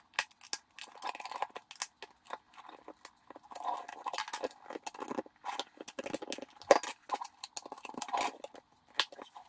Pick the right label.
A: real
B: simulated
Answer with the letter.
A